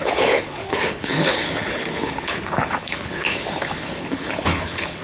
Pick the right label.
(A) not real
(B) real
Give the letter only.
A